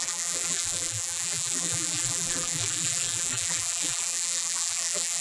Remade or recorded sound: remade